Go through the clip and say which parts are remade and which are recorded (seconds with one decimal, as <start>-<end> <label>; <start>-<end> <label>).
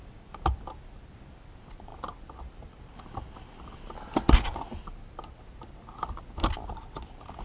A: 0.0-7.4 recorded